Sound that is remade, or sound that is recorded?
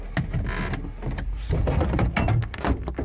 recorded